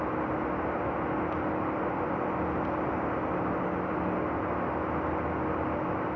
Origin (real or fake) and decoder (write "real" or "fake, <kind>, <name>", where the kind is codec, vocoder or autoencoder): real